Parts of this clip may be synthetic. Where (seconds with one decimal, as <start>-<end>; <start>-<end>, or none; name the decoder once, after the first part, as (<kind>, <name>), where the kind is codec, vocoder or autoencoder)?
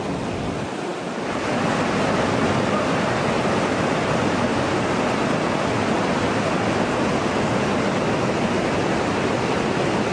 none